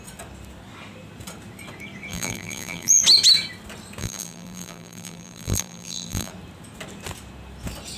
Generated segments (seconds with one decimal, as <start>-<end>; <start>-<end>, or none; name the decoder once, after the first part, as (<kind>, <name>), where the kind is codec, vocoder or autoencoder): 2.1-3.0 (vocoder, BigVGAN v2); 4.0-6.3